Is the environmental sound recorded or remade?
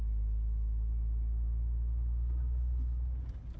recorded